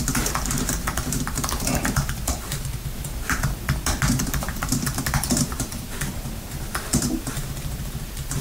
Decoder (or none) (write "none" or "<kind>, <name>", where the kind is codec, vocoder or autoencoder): vocoder, BigVGAN v2